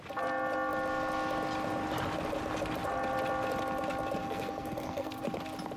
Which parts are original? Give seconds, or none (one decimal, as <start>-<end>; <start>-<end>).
0.0-4.2; 5.2-5.8